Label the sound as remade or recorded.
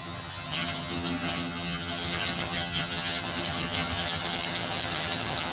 remade